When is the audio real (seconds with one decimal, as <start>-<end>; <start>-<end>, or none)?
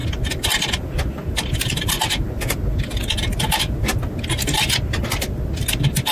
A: 0.0-6.1